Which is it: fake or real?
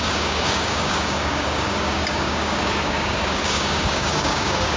fake